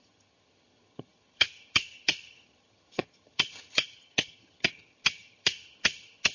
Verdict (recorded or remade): remade